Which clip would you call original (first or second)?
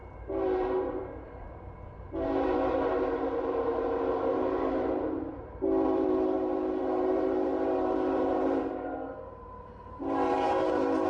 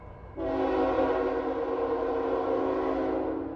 second